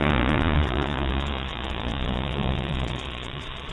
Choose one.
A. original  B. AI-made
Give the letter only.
B